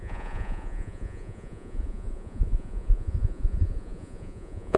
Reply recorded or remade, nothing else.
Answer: remade